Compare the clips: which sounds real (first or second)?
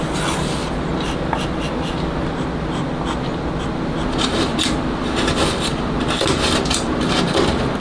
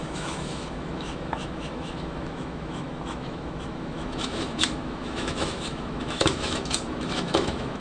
first